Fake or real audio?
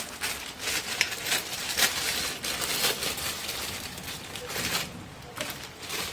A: real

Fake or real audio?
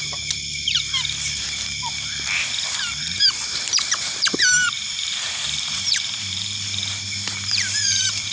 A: fake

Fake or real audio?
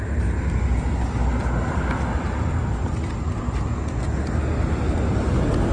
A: real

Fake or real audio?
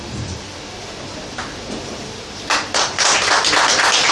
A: fake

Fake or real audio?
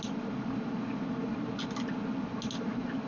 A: real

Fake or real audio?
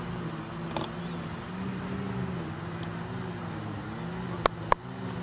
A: real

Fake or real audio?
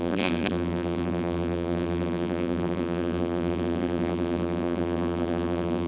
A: fake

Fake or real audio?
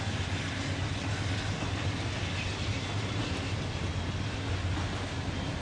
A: real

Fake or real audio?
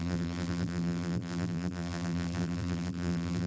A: fake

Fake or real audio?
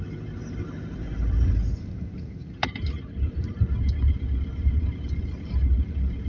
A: fake